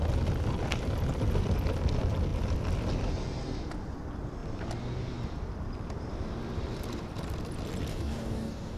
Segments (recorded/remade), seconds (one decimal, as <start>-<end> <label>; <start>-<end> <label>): 0.0-7.9 recorded; 7.9-8.8 remade

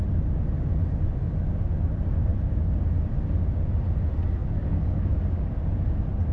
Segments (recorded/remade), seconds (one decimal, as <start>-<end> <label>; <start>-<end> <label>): 0.0-4.4 recorded; 4.4-5.4 remade; 5.4-6.3 recorded

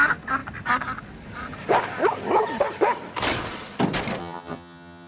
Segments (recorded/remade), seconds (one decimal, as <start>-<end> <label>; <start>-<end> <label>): 0.0-4.2 recorded; 4.2-5.1 remade

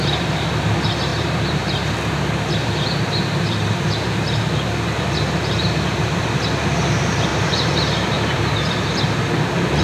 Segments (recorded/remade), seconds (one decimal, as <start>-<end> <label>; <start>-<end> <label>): 0.0-1.1 recorded; 1.1-1.9 remade; 1.9-7.3 recorded; 7.3-8.6 remade; 8.6-9.8 recorded

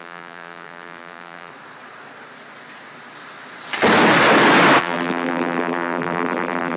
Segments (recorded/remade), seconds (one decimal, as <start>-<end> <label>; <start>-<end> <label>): 0.0-1.5 remade; 1.5-4.8 recorded; 4.8-6.8 remade

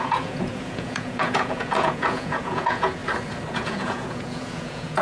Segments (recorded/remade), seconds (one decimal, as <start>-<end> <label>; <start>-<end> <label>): 0.0-3.0 remade; 3.0-3.5 recorded; 3.5-5.0 remade

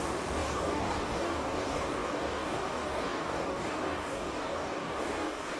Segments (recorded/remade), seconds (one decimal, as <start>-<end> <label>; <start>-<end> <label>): 0.0-5.6 remade